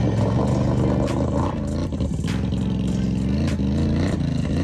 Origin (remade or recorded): recorded